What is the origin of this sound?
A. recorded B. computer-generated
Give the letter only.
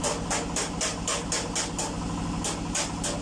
A